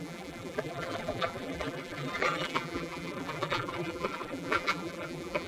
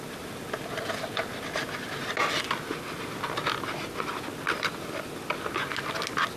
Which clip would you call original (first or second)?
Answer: second